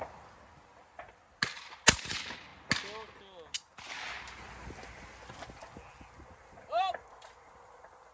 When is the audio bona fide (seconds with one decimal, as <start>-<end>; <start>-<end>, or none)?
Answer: 0.0-8.1